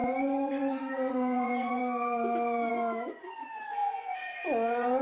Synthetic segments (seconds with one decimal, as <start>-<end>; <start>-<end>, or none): 0.0-1.8; 2.7-5.0